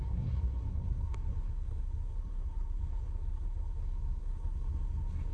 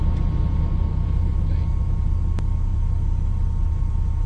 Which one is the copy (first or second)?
first